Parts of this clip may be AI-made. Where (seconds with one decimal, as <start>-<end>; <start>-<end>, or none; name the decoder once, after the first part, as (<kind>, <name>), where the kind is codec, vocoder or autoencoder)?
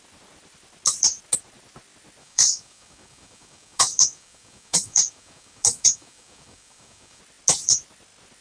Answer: 2.2-7.2 (codec, DAC)